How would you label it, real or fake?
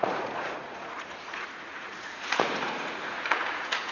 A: fake